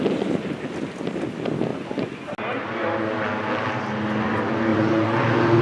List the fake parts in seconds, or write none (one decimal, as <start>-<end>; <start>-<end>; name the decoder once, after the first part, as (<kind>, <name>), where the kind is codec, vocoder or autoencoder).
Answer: 1.7-2.3 (vocoder, Vocos); 4.7-5.6